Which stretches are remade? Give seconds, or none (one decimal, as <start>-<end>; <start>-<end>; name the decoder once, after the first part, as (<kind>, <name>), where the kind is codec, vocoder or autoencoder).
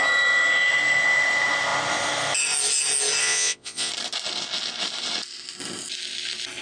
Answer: 3.2-3.9 (vocoder, Vocos)